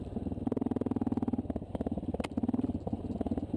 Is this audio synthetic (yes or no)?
no